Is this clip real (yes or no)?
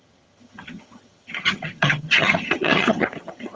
no